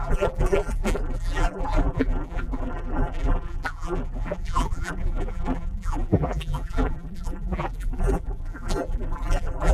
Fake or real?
fake